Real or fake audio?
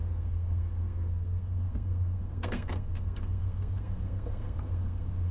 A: fake